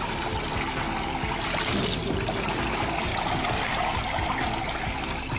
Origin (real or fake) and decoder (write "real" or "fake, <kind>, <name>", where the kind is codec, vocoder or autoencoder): real